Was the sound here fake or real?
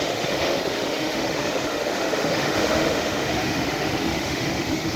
fake